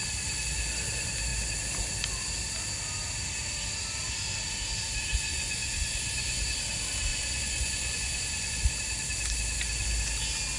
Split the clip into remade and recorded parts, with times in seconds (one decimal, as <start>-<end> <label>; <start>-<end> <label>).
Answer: 0.0-5.3 recorded; 5.3-6.6 remade; 6.6-7.1 recorded; 7.1-8.6 remade; 8.6-10.6 recorded